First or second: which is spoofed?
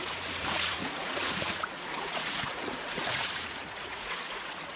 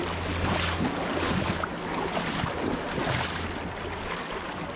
first